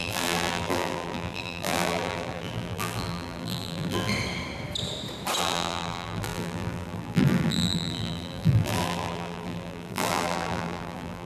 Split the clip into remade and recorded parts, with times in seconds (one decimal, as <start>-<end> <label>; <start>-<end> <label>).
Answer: 0.0-4.1 remade; 4.1-5.4 recorded; 5.4-11.3 remade